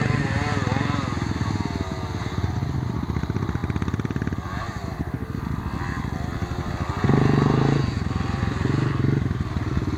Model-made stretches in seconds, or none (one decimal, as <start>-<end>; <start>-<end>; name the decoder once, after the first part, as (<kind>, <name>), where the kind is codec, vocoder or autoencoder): none